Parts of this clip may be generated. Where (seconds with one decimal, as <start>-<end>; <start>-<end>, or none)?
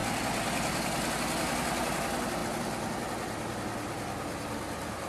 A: none